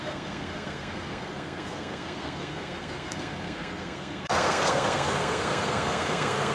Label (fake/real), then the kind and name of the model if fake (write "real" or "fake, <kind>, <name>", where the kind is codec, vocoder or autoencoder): fake, codec, SNAC